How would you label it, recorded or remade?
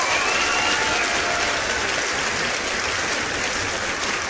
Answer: recorded